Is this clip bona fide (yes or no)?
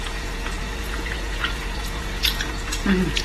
no